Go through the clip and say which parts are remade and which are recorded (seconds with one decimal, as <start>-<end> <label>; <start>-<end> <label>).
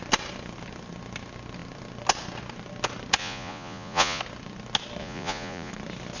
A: 0.0-3.2 recorded; 3.2-4.2 remade; 4.2-5.0 recorded; 5.0-5.7 remade; 5.7-6.2 recorded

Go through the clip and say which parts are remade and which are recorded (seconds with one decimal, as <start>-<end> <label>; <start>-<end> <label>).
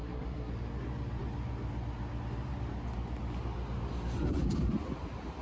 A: 0.0-0.5 remade; 0.5-5.4 recorded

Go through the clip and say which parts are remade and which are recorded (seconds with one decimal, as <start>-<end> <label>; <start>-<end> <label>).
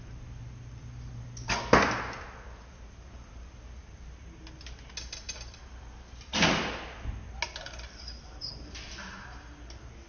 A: 0.0-3.8 recorded; 3.8-4.4 remade; 4.4-10.1 recorded